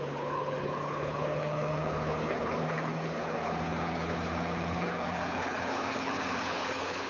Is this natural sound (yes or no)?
no